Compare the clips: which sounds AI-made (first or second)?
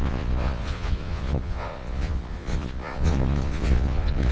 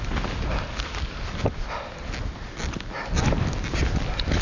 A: first